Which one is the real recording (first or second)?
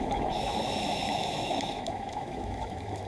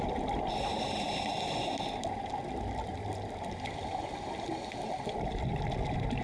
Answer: second